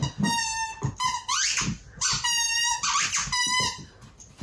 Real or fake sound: real